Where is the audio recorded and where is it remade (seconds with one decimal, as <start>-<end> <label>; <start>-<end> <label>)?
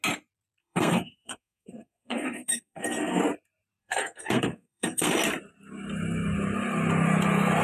0.0-0.6 recorded; 0.6-3.2 remade; 3.2-3.8 recorded; 3.8-5.1 remade; 5.1-7.6 recorded